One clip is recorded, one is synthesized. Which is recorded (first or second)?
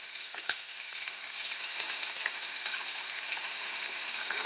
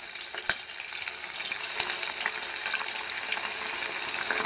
second